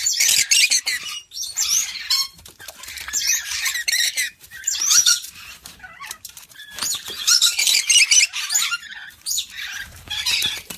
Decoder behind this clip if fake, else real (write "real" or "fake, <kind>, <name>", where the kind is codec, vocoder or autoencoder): fake, vocoder, BigVGAN v2